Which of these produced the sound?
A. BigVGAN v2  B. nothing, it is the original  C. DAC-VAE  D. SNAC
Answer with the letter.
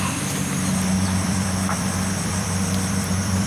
A